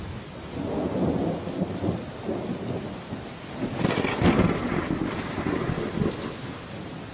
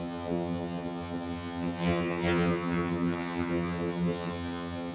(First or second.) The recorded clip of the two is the first